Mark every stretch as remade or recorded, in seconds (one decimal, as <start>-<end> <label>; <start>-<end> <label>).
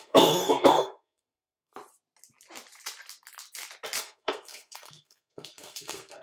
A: 0.0-1.7 remade; 1.7-4.0 recorded; 4.0-6.2 remade